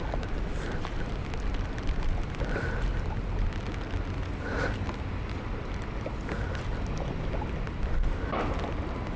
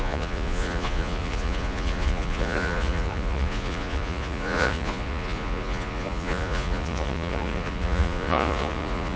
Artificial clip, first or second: second